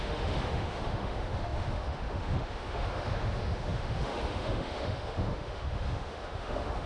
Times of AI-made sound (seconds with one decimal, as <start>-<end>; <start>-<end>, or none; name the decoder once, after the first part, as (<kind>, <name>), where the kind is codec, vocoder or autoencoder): 0.0-6.9 (autoencoder, DAC-VAE)